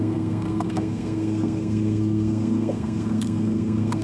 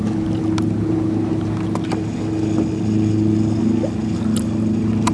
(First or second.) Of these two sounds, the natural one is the second